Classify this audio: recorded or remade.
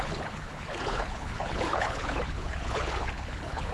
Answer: remade